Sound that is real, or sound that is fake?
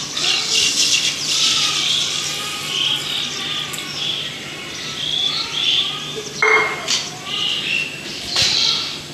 real